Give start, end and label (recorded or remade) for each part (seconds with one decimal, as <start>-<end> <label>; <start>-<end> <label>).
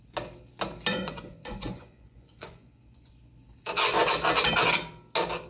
0.0-0.9 recorded; 0.9-3.1 remade; 3.1-5.5 recorded